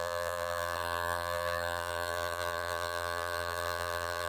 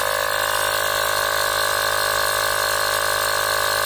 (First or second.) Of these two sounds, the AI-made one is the first